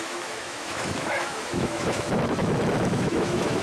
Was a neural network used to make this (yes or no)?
yes